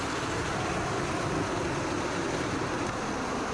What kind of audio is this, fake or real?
real